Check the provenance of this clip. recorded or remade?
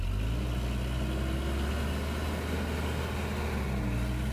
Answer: recorded